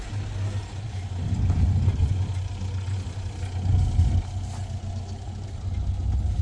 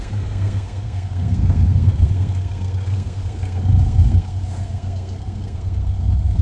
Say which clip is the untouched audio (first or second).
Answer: first